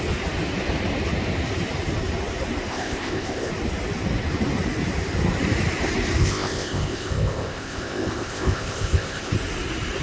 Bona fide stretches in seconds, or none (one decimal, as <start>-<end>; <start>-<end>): 0.0-2.7; 3.5-6.2; 9.3-10.0